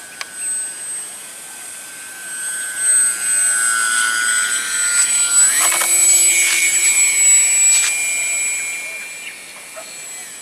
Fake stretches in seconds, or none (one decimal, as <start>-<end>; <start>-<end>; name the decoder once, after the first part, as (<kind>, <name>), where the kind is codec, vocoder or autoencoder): none